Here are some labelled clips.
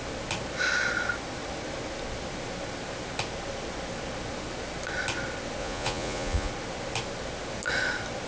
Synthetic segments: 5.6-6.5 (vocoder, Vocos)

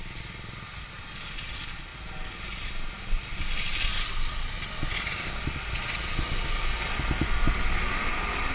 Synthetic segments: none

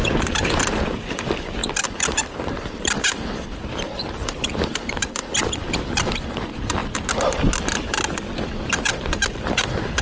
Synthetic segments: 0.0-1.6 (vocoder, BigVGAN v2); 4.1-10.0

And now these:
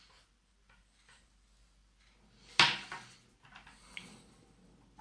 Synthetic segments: none